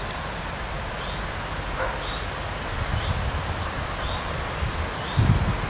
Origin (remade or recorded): recorded